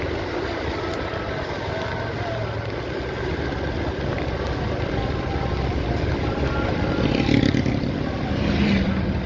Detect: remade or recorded recorded